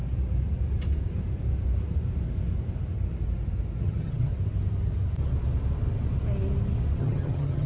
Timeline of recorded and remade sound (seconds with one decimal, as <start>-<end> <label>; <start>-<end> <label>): 0.0-3.8 recorded; 3.8-4.3 remade; 4.3-7.0 recorded; 7.0-7.7 remade